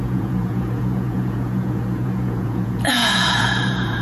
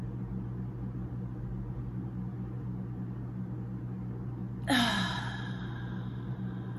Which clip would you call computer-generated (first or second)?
first